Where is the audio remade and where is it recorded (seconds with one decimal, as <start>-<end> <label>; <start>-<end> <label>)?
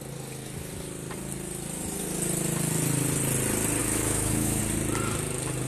0.0-3.8 recorded; 3.8-4.6 remade; 4.6-5.7 recorded